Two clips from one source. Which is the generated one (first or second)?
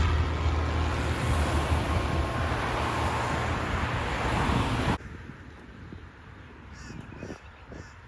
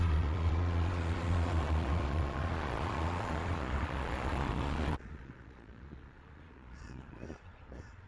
second